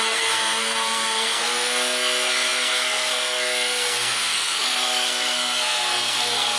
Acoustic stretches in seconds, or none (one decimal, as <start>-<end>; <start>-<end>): none